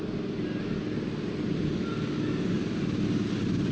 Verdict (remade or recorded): recorded